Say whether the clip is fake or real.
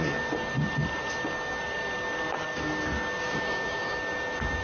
real